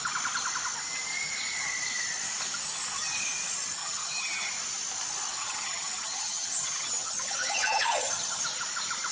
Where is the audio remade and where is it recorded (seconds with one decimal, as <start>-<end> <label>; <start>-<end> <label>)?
0.0-3.8 recorded; 3.8-4.5 remade; 4.5-5.4 recorded; 5.4-8.4 remade; 8.4-9.1 recorded